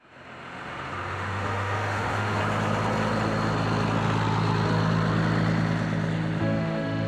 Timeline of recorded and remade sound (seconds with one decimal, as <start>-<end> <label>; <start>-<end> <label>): 0.0-2.4 remade; 2.4-6.4 recorded; 6.4-7.1 remade